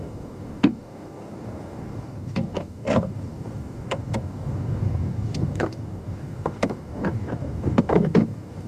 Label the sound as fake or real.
fake